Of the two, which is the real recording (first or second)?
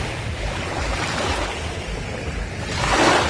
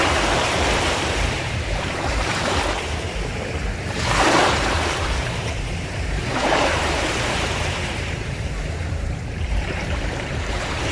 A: first